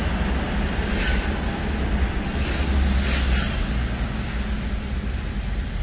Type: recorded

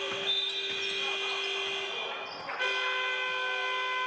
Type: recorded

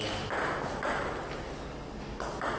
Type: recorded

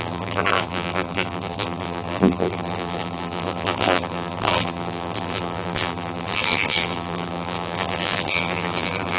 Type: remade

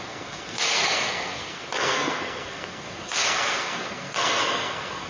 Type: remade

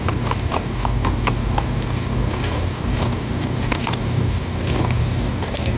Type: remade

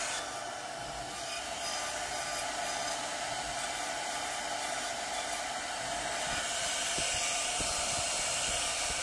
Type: recorded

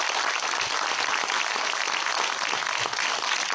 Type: recorded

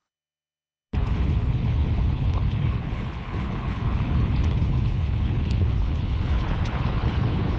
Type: remade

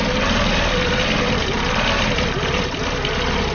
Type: recorded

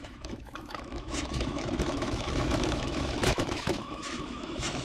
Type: remade